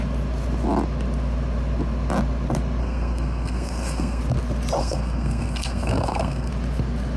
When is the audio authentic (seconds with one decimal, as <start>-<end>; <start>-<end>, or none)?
0.0-2.8; 4.2-4.8; 6.5-7.2